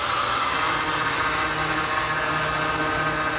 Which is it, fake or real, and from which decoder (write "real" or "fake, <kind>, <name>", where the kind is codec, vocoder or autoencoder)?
real